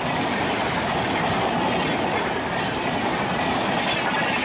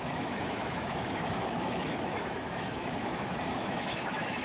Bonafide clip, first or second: first